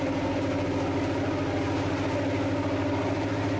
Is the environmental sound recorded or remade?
recorded